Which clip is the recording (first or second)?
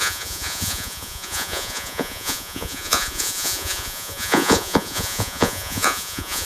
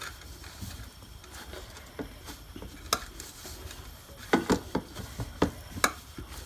second